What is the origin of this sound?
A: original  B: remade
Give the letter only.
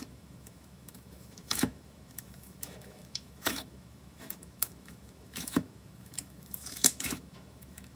B